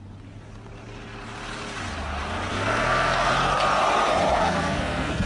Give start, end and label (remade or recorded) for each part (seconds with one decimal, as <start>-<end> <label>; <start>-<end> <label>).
0.0-2.5 recorded; 2.5-3.3 remade; 3.3-4.4 recorded; 4.4-5.3 remade